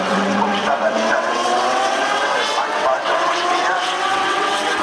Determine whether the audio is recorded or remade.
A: remade